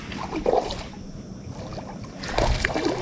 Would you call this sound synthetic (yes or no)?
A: no